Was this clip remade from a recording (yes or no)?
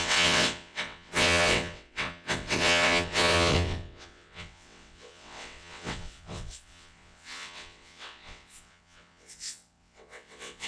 yes